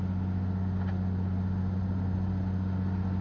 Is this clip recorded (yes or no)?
yes